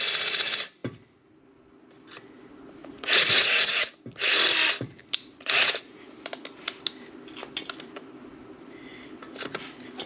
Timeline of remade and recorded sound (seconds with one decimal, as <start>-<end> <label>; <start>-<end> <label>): 0.0-2.8 recorded; 2.8-3.9 remade; 3.9-5.3 recorded; 5.3-6.1 remade; 6.1-10.1 recorded